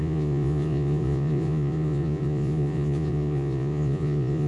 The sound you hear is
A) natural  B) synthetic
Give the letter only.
B